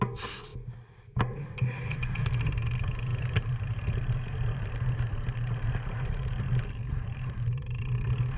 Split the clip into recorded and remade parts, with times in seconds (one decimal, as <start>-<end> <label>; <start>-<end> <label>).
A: 0.0-3.1 recorded; 3.1-7.8 remade; 7.8-8.4 recorded